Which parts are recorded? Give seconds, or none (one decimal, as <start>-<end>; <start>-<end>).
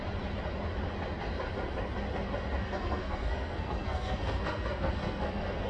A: 0.0-2.6